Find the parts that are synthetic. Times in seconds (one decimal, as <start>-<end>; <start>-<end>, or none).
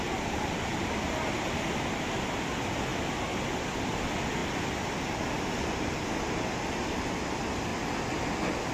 none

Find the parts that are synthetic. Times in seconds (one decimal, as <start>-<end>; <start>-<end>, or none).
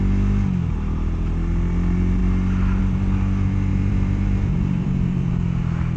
3.7-5.3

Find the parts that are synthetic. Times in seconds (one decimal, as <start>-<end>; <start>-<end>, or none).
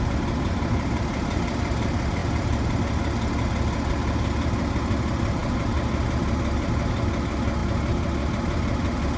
none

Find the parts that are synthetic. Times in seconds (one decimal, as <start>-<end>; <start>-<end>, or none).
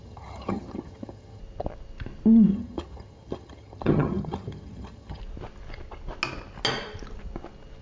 0.0-1.4; 2.5-5.2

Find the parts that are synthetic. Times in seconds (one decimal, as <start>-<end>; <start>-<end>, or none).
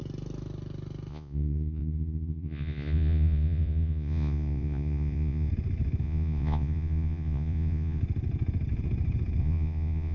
1.1-5.5; 6.0-8.0; 9.4-10.1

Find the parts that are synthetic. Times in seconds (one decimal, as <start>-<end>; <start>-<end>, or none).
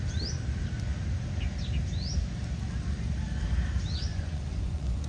4.1-5.1